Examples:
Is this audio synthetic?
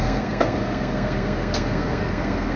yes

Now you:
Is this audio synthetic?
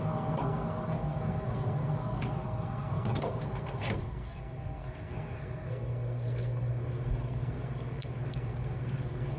yes